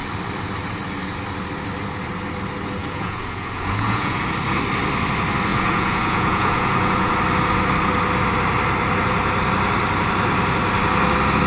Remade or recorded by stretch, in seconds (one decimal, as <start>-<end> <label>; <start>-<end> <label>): 0.0-2.8 recorded; 2.8-4.2 remade; 4.2-5.5 recorded; 5.5-7.1 remade; 7.1-11.5 recorded